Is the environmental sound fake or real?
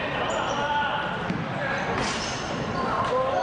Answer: fake